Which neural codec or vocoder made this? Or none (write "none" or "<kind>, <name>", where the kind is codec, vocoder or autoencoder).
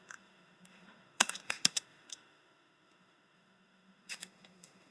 autoencoder, DAC-VAE